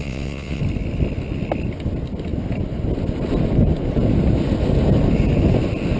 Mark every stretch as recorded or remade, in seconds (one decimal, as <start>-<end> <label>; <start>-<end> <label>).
0.0-0.6 remade; 0.6-6.0 recorded